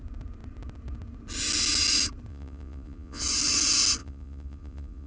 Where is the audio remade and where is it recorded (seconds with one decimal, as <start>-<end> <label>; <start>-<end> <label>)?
0.0-2.3 recorded; 2.3-3.2 remade; 3.2-4.0 recorded; 4.0-5.1 remade